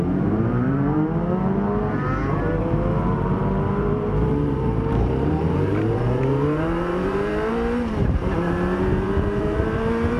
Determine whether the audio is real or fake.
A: fake